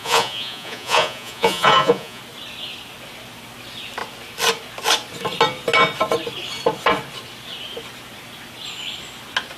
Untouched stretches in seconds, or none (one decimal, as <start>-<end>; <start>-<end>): 2.2-9.6